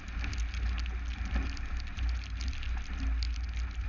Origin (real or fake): real